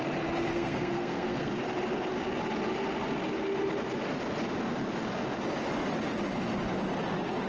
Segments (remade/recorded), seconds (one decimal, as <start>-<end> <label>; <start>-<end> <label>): 0.0-0.5 recorded; 0.5-1.5 remade; 1.5-7.5 recorded

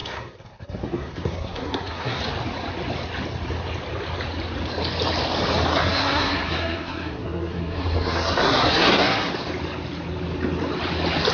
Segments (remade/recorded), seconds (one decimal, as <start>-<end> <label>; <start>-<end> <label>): 0.0-2.2 remade; 2.2-5.7 recorded; 5.7-9.3 remade; 9.3-11.3 recorded

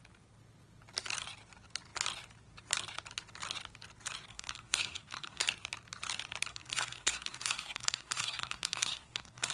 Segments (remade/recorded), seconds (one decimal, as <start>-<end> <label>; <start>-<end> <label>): 0.0-4.3 recorded; 4.3-5.5 remade; 5.5-6.5 recorded; 6.5-9.5 remade

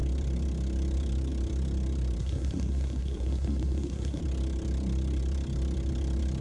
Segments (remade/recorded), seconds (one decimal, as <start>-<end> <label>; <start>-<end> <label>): 0.0-2.2 recorded; 2.2-4.2 remade; 4.2-6.4 recorded

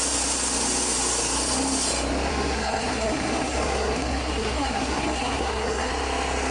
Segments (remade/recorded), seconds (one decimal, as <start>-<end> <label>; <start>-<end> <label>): 0.0-2.3 recorded; 2.3-5.9 remade; 5.9-6.5 recorded